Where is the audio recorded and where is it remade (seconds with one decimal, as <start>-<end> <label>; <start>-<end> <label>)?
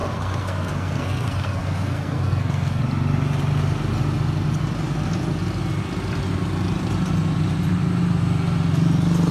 0.0-2.8 remade; 2.8-9.3 recorded